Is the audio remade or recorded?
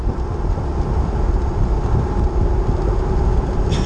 recorded